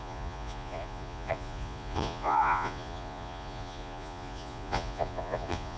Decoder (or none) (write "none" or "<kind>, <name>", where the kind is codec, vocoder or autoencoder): vocoder, Vocos